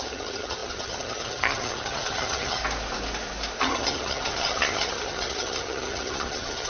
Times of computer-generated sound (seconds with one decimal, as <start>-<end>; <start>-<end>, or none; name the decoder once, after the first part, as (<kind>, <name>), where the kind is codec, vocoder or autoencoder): 0.0-2.6 (vocoder, HiFi-GAN); 3.6-6.7